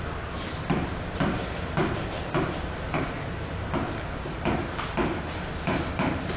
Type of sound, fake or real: real